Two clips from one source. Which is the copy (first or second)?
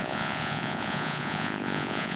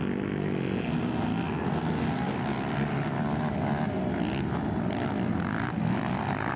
first